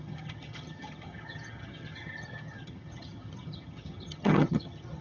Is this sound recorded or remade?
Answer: remade